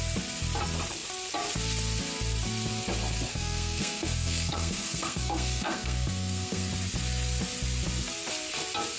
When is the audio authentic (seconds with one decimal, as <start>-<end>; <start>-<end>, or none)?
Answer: 0.0-3.3; 6.7-9.0